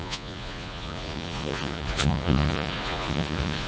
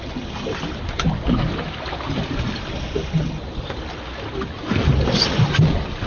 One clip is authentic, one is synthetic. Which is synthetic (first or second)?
first